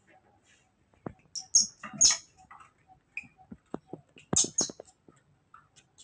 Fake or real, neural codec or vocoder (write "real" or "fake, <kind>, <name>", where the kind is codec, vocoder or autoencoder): real